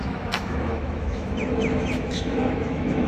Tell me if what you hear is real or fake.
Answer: fake